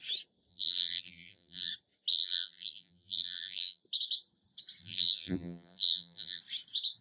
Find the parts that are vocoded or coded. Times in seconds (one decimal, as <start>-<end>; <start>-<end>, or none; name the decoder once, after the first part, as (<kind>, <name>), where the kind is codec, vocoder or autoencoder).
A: 0.5-1.7 (vocoder, BigVGAN v2); 2.1-3.8; 4.8-6.4